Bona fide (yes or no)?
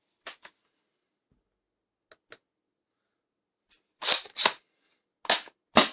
yes